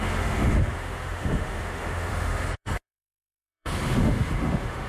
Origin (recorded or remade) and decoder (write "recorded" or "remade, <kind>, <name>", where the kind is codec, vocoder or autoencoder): remade, autoencoder, DAC-VAE